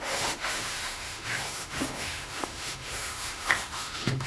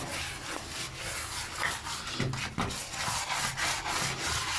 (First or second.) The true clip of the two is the second